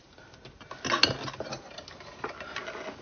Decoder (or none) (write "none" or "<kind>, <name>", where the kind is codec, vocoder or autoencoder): none